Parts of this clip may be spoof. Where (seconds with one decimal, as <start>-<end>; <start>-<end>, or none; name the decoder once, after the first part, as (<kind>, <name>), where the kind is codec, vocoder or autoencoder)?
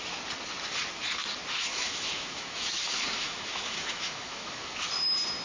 1.7-4.9 (autoencoder, DAC-VAE)